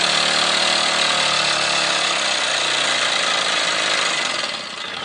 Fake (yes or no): no